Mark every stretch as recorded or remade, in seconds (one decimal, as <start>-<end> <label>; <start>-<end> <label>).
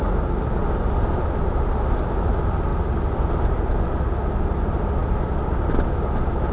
0.0-0.6 recorded; 0.6-2.1 remade; 2.1-6.5 recorded